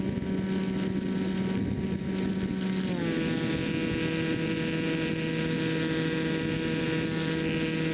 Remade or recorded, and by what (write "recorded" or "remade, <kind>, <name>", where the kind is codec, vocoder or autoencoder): recorded